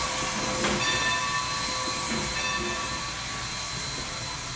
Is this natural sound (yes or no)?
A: yes